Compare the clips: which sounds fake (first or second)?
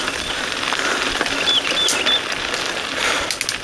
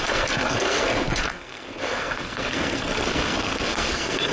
second